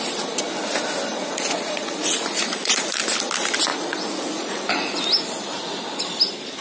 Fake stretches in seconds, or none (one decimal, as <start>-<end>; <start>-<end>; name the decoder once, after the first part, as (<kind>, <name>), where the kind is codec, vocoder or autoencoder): 1.1-3.0 (vocoder, Vocos); 3.7-5.0